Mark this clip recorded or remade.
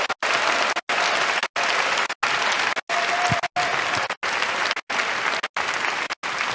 recorded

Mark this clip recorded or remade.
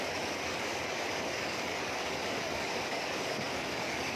remade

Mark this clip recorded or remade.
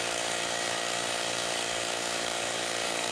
remade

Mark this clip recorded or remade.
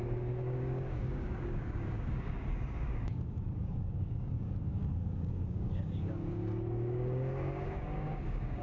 remade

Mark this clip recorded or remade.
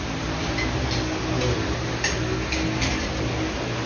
recorded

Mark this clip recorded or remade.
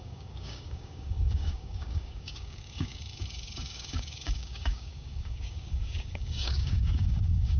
remade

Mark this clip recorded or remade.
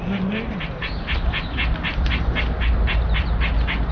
recorded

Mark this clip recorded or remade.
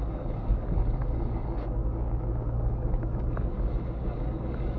remade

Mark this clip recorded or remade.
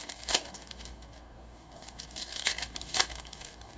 remade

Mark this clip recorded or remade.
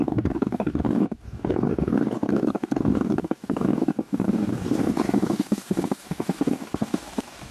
remade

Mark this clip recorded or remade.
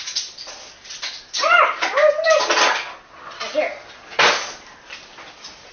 recorded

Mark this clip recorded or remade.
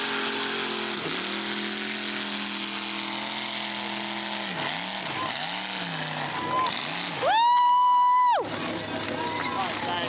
recorded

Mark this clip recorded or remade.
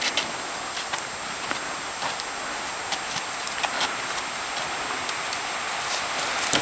recorded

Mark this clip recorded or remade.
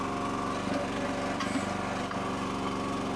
recorded